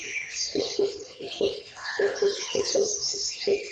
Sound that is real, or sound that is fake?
fake